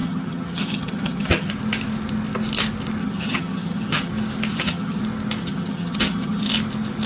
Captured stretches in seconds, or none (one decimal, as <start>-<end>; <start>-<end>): 1.5-3.0; 4.1-4.5; 5.0-5.4; 6.5-7.1